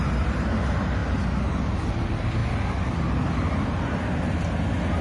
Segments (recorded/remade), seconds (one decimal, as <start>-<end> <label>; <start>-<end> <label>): 0.0-5.0 recorded